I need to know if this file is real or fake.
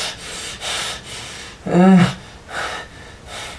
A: real